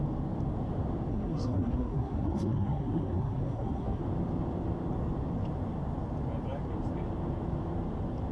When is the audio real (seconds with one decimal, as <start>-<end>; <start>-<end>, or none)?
0.0-1.1; 4.0-8.3